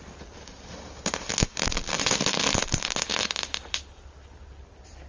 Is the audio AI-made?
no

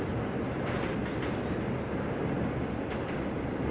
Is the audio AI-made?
no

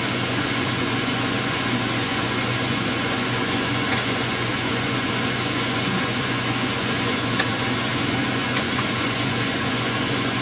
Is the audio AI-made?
yes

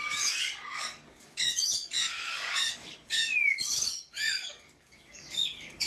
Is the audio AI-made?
yes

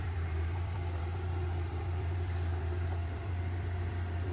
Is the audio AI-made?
yes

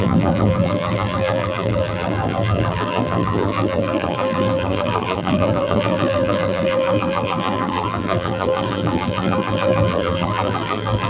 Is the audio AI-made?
yes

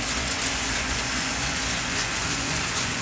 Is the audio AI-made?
yes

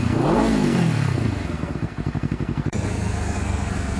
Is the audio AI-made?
yes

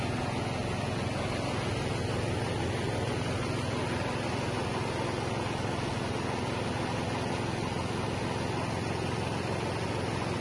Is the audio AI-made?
no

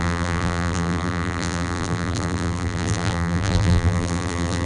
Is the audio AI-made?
yes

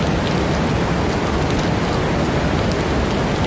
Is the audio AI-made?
no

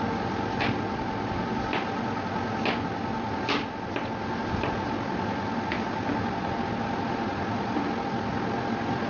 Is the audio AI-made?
no